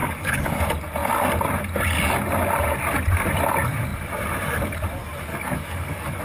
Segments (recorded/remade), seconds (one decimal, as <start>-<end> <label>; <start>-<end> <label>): 0.0-0.6 remade; 0.6-5.3 recorded; 5.3-6.2 remade